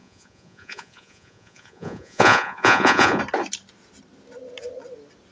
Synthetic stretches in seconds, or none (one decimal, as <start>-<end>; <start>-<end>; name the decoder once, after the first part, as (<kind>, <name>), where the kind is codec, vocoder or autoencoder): 0.0-3.2 (vocoder, Vocos)